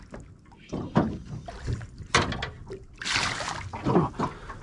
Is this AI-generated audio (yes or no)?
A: no